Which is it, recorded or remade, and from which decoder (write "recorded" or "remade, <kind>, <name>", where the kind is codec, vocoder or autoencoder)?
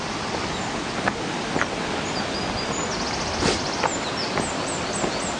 recorded